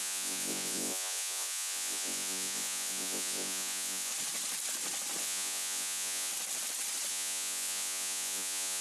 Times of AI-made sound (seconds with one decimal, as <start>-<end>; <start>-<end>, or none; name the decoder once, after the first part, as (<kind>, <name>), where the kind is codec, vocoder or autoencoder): 0.0-4.1 (vocoder, Vocos); 5.2-6.3; 7.1-8.8